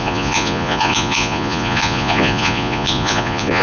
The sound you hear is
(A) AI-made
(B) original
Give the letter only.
A